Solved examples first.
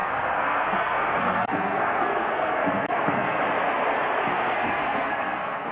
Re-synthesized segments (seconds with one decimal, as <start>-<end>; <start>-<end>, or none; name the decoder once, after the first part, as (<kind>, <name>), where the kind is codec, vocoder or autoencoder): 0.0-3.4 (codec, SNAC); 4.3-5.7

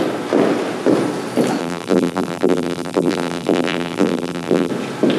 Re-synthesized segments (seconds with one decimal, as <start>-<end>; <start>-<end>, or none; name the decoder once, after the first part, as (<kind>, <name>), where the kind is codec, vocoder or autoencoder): 1.6-4.7 (vocoder, BigVGAN v2)

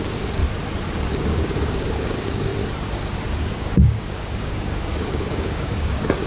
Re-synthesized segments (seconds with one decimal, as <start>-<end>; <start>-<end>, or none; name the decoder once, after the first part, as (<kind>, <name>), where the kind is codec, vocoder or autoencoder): 0.0-0.4 (codec, DAC); 1.1-2.5; 3.4-6.3

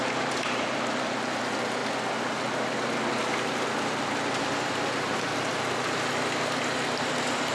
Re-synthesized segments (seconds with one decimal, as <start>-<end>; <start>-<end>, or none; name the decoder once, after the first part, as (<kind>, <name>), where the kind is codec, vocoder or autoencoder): 0.0-1.8 (vocoder, BigVGAN v2); 3.8-5.5

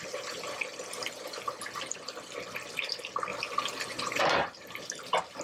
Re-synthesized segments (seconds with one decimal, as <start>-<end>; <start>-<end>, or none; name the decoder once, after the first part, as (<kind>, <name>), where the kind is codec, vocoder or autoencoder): none

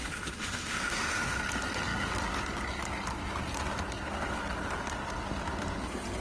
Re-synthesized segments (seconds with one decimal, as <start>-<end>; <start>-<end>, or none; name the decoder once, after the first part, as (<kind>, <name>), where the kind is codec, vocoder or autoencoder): 0.0-1.4 (autoencoder, DAC-VAE)